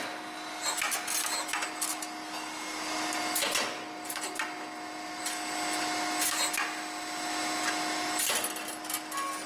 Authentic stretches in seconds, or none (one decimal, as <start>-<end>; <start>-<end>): 0.0-9.5